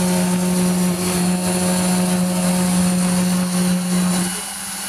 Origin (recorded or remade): recorded